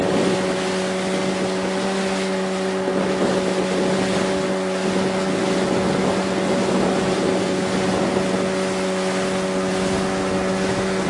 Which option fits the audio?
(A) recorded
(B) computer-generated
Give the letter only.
A